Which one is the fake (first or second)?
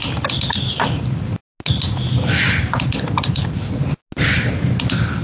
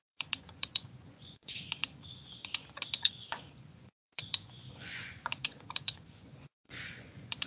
second